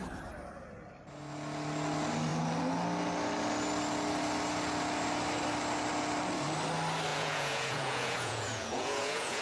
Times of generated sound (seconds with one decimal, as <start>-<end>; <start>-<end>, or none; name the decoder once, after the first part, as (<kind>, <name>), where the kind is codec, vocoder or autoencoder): 7.1-9.4 (vocoder, Vocos)